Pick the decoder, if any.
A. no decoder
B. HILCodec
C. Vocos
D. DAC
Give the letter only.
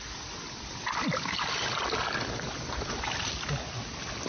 A